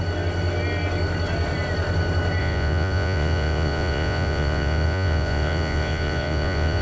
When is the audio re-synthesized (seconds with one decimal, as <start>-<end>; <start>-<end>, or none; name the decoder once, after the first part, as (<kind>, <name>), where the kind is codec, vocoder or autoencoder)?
2.4-6.8 (vocoder, Vocos)